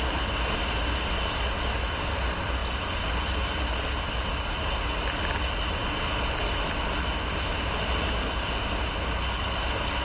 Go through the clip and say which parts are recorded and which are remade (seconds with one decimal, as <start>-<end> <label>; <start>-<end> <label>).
0.0-10.0 recorded

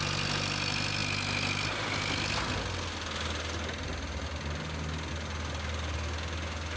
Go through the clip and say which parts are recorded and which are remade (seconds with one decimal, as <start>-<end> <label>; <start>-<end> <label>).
0.0-6.8 recorded

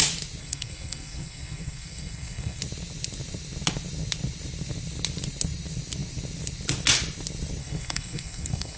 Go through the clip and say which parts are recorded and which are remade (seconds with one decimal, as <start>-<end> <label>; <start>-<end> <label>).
0.0-0.4 recorded; 0.4-2.6 remade; 2.6-7.6 recorded; 7.6-8.8 remade

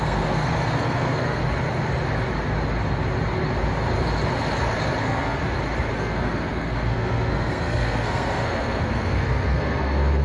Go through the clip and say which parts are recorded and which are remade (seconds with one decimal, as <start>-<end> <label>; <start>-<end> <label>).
0.0-1.4 remade; 1.4-5.0 recorded; 5.0-5.4 remade; 5.4-5.9 recorded; 5.9-10.2 remade

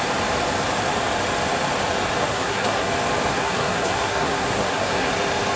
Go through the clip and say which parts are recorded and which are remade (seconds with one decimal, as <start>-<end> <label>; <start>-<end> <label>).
0.0-2.2 recorded; 2.2-2.9 remade; 2.9-3.3 recorded; 3.3-5.1 remade; 5.1-5.6 recorded

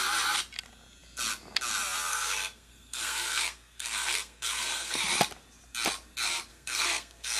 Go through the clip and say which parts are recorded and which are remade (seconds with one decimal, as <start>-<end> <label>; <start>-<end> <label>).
0.0-2.1 recorded; 2.1-5.0 remade; 5.0-6.5 recorded; 6.5-7.4 remade